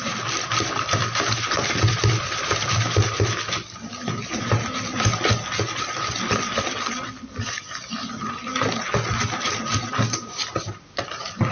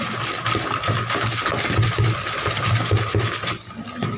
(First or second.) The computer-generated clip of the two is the first